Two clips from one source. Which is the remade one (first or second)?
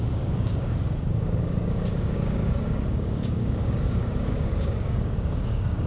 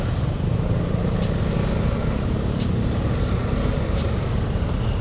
first